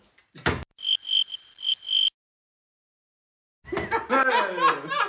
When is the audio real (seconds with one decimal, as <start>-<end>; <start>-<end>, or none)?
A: 0.0-5.1